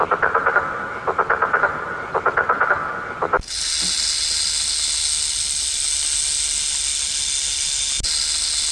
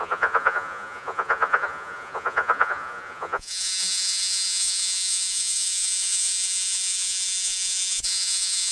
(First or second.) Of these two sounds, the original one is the first